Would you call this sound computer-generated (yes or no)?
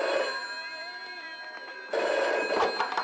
no